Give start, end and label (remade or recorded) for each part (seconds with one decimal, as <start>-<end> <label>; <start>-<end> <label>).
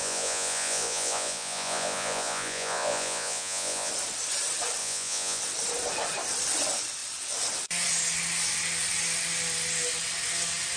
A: 0.0-3.9 remade; 3.9-4.8 recorded; 4.8-5.4 remade; 5.4-10.8 recorded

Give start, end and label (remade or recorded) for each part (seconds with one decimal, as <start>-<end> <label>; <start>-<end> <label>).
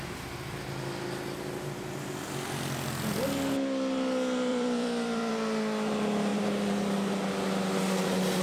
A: 0.0-4.5 recorded; 4.5-5.3 remade; 5.3-6.3 recorded; 6.3-7.3 remade; 7.3-8.4 recorded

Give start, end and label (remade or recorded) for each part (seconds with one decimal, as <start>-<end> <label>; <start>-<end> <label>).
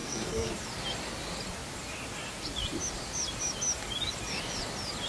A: 0.0-0.5 remade; 0.5-5.1 recorded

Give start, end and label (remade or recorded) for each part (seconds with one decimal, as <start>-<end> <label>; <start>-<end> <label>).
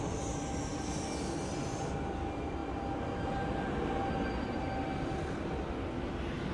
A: 0.0-6.5 recorded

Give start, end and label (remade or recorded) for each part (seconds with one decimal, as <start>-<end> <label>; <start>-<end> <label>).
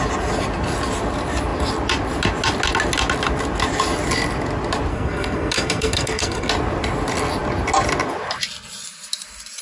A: 0.0-4.9 recorded; 4.9-6.5 remade; 6.5-9.6 recorded